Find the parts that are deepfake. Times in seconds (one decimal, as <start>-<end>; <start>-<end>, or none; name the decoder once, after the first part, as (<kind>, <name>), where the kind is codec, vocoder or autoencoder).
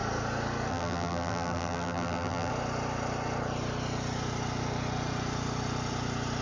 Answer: 0.7-2.5 (vocoder, BigVGAN v2)